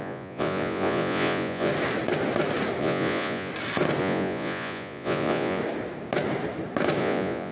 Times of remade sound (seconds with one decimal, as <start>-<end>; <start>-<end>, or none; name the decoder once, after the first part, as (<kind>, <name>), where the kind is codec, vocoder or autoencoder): 0.0-1.7 (vocoder, Vocos); 2.8-3.5; 4.0-5.6; 7.0-7.5